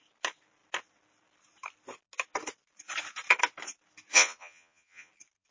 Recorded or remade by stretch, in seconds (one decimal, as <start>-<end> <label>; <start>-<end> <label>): 0.0-4.1 recorded; 4.1-5.1 remade; 5.1-5.5 recorded